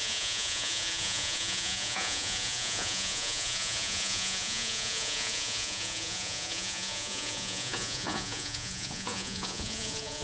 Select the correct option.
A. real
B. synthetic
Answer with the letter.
B